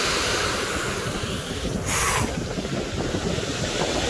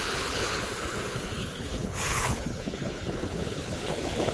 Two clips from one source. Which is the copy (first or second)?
second